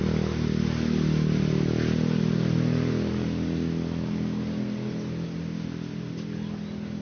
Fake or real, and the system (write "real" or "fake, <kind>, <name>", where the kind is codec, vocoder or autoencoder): real